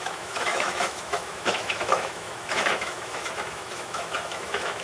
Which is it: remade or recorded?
remade